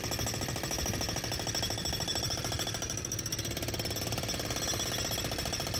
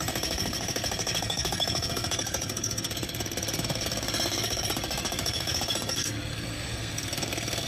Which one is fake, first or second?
second